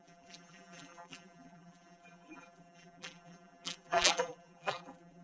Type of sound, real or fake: fake